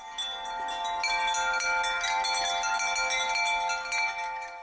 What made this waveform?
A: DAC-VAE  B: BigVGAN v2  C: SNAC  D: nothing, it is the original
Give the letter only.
D